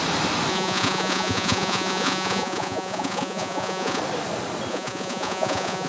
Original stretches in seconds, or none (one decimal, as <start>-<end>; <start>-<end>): 0.0-0.5; 4.0-4.7